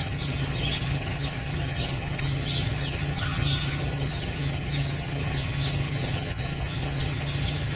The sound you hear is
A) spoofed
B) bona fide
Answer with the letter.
A